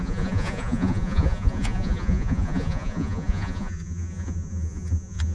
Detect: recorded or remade remade